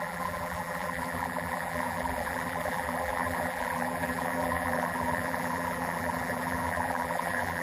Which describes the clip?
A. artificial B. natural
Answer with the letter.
A